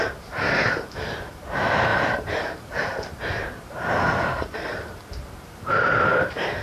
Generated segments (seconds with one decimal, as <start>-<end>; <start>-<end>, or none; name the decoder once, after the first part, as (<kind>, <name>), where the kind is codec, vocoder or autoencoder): 0.0-6.6 (vocoder, BigVGAN v2)